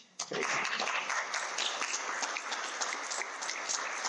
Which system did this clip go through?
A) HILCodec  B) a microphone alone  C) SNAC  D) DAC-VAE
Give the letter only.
B